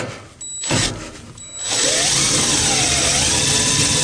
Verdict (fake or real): real